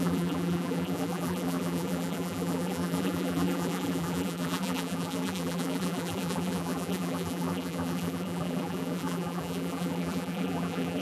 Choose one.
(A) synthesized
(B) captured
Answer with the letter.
A